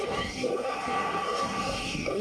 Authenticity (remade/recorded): remade